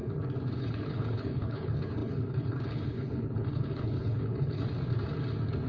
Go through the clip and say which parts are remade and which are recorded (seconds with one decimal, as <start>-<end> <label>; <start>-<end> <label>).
0.0-0.6 recorded; 0.6-4.6 remade; 4.6-5.7 recorded